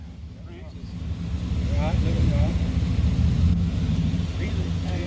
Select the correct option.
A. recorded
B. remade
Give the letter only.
A